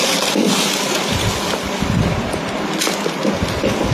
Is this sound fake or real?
fake